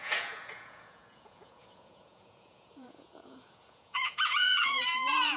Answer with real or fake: fake